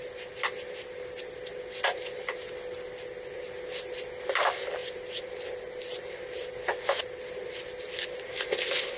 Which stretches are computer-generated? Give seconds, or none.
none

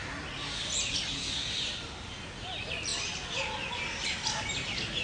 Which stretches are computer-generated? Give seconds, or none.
none

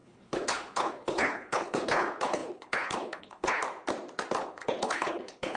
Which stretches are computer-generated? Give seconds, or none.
0.0-3.6 (codec, HILCodec); 4.4-5.6

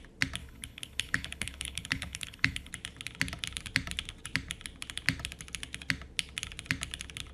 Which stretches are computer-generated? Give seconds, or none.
0.4-2.7 (codec, HILCodec)

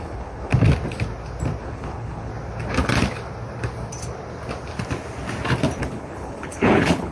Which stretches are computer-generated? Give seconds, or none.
0.0-0.5 (codec, HILCodec); 1.6-2.3; 5.8-7.1